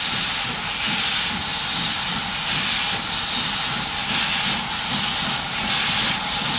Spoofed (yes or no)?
no